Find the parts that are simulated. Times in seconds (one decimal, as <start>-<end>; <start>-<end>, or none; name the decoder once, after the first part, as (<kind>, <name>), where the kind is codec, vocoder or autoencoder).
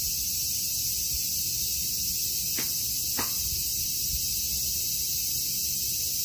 none